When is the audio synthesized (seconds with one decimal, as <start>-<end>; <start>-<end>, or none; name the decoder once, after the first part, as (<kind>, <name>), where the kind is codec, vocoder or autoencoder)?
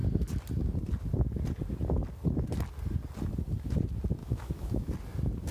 4.2-4.9 (autoencoder, DAC-VAE)